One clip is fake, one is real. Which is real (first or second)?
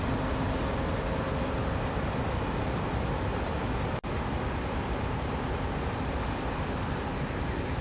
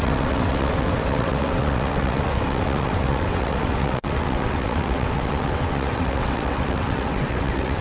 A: first